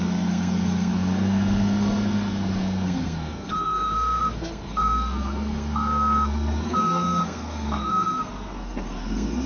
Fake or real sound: fake